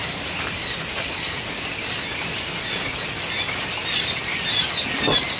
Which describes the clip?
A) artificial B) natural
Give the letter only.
B